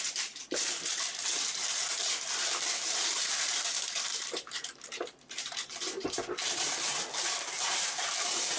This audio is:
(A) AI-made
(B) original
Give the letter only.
A